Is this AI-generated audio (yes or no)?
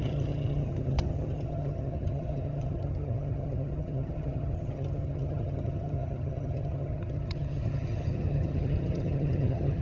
yes